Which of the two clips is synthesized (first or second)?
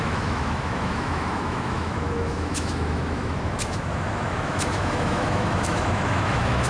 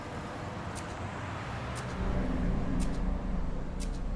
first